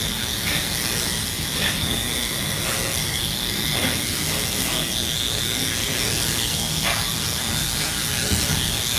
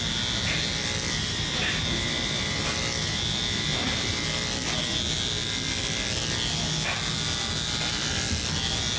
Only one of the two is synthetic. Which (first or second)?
first